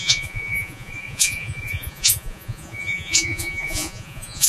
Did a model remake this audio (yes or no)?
yes